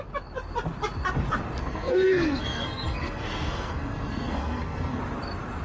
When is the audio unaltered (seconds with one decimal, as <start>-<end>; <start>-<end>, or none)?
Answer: 0.0-1.6; 5.0-5.6

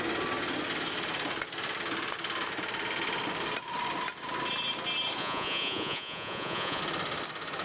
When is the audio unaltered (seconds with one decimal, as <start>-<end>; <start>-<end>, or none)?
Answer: 0.0-5.2; 6.8-7.6

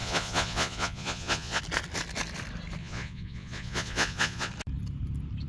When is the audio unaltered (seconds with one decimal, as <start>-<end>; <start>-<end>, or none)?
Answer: 1.6-2.8; 4.5-5.5